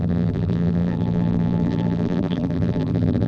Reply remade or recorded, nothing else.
remade